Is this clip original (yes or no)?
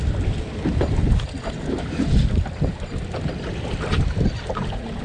no